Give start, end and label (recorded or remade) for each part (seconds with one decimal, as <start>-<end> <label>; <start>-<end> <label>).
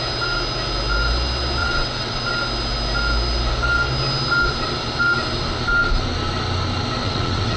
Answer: 0.0-1.6 recorded; 1.6-2.2 remade; 2.2-7.0 recorded; 7.0-7.6 remade